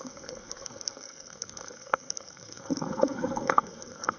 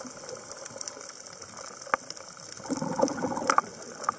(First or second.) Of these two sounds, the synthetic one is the first